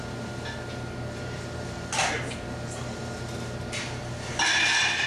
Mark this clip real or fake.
real